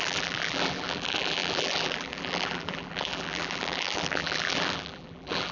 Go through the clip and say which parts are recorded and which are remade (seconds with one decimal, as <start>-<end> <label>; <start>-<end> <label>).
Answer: 0.0-5.5 remade